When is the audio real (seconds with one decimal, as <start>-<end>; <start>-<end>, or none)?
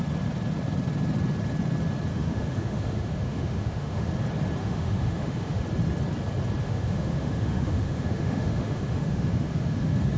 0.0-2.1; 4.1-4.6; 5.6-6.6